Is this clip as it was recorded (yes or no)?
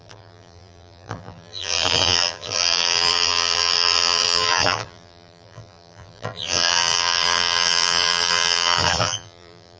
no